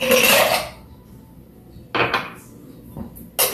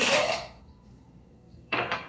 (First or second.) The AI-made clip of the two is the second